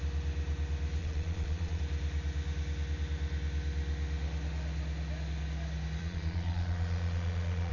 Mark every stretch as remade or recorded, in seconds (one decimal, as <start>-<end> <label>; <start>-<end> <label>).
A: 0.0-1.0 recorded; 1.0-1.8 remade; 1.8-6.0 recorded; 6.0-7.7 remade

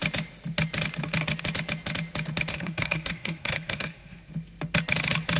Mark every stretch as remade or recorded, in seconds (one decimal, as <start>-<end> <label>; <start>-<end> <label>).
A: 0.0-2.5 recorded; 2.5-4.3 remade; 4.3-5.4 recorded

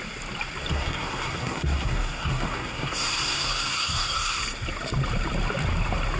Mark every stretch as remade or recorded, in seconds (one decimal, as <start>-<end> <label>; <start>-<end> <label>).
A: 0.0-0.7 recorded; 0.7-4.4 remade; 4.4-6.2 recorded

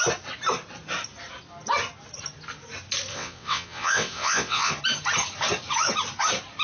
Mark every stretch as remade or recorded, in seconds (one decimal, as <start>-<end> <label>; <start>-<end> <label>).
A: 0.0-3.1 recorded; 3.1-4.7 remade; 4.7-6.6 recorded

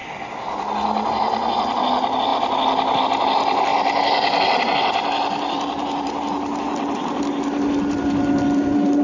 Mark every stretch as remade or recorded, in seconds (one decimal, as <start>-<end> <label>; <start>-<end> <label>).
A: 0.0-9.0 recorded

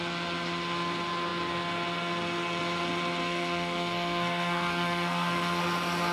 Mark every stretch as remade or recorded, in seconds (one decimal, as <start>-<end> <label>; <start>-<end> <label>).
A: 0.0-3.2 recorded; 3.2-5.6 remade; 5.6-6.1 recorded

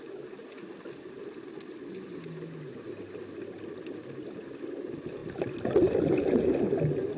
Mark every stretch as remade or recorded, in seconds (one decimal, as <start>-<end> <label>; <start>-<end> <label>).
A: 0.0-7.2 recorded